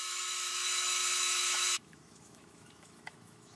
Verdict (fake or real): fake